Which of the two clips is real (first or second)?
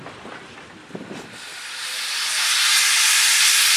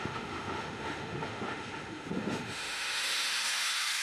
first